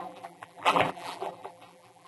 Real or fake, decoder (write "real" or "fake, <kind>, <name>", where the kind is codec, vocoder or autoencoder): fake, vocoder, BigVGAN v2